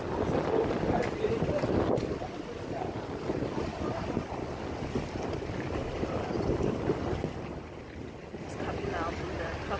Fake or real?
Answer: real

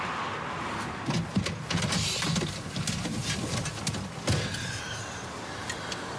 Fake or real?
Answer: real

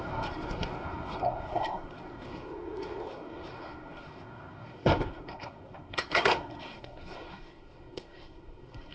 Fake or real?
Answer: fake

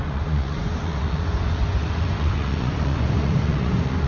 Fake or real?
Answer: fake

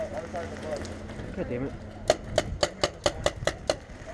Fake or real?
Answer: real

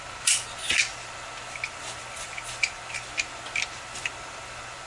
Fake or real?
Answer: real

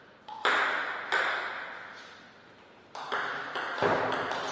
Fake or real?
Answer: real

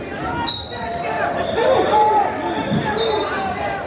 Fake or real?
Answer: fake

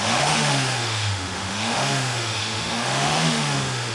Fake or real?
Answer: fake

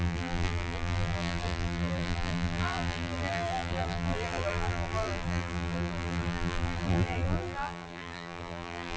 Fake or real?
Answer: fake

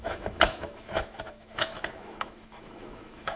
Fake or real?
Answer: fake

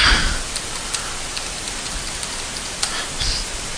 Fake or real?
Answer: real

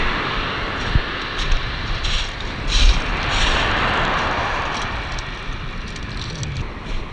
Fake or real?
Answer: real